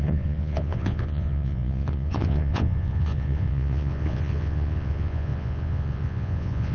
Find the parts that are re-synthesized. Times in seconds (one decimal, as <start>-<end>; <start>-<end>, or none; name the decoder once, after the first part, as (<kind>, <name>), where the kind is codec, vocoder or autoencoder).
0.0-6.7 (vocoder, Vocos)